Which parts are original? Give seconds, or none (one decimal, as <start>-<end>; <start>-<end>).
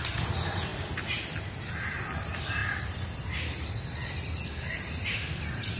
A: 0.0-5.8